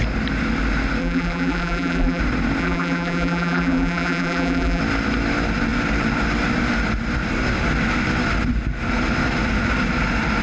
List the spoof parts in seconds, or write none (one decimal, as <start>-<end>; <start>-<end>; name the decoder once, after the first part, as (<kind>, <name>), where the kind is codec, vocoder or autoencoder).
1.0-2.2 (vocoder, BigVGAN v2); 2.6-4.8